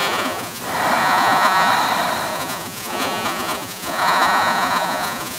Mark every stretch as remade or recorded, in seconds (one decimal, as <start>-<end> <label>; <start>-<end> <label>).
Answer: 0.0-0.6 remade; 0.6-1.0 recorded; 1.0-1.7 remade; 1.7-2.3 recorded; 2.3-5.4 remade